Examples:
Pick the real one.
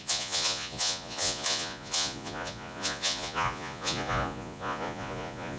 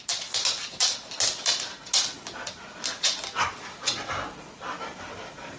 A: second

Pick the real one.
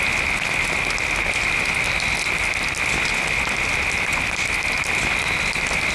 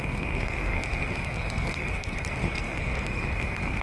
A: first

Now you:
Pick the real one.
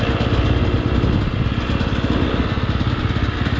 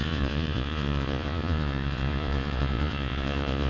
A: first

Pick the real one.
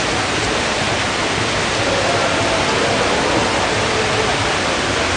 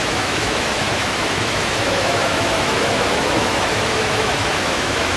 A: first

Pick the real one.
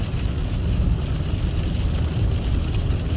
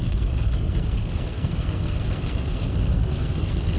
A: first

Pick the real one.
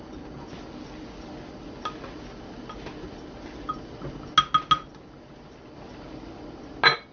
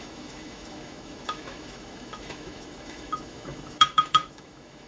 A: first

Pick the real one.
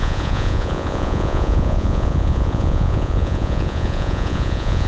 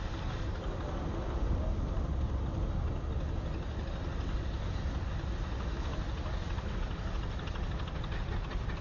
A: second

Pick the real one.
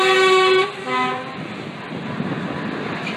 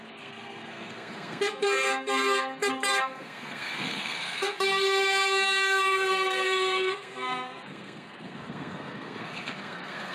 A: first